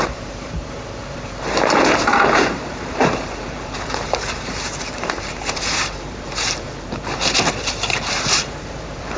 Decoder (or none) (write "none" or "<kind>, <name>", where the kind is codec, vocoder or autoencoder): vocoder, BigVGAN v2